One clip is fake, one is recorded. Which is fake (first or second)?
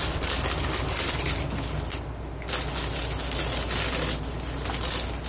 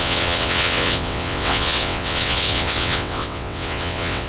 second